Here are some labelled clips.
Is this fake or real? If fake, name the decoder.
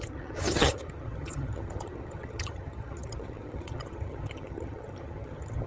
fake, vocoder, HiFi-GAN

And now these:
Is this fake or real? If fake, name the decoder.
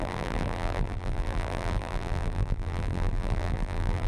fake, vocoder, BigVGAN v2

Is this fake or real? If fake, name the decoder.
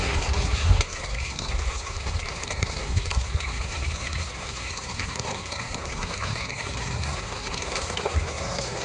fake, codec, SNAC